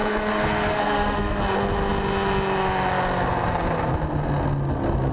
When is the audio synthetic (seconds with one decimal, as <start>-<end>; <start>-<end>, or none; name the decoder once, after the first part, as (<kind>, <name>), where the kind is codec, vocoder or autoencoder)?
0.0-1.4 (codec, SNAC)

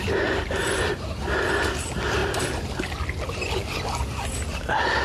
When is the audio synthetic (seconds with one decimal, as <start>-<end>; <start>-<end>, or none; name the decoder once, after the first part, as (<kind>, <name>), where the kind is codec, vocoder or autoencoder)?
none

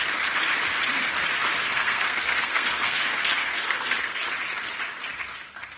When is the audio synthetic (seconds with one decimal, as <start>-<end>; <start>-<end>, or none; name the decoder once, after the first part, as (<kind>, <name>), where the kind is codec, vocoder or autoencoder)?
1.7-4.2 (codec, SNAC)

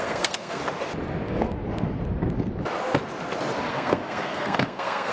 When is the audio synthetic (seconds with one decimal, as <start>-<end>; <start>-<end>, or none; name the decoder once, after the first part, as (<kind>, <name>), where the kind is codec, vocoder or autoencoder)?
0.0-0.6 (codec, SNAC); 3.7-5.1